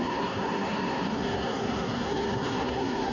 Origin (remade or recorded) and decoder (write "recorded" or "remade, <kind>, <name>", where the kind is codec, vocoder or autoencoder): remade, codec, SNAC